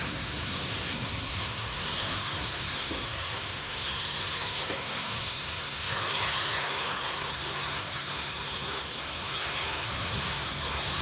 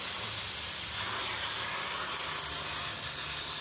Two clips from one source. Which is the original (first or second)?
second